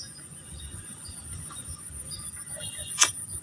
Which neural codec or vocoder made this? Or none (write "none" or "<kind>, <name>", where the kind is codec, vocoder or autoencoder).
vocoder, Vocos